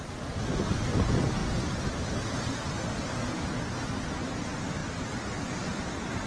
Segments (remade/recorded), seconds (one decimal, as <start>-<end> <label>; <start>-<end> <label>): 0.0-6.3 recorded